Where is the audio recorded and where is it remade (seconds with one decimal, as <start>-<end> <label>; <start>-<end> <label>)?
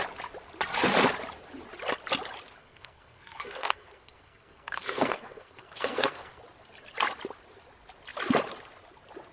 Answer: 0.0-2.6 recorded; 2.6-6.4 remade; 6.4-9.3 recorded